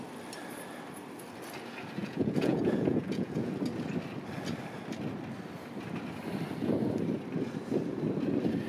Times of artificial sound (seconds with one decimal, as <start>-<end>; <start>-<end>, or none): 2.0-3.5